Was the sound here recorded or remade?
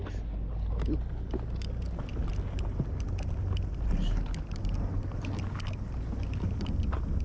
recorded